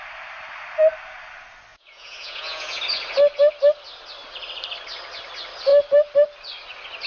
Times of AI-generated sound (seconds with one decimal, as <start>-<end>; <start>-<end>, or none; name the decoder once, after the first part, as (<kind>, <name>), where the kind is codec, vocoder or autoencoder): 1.7-2.8 (vocoder, Vocos)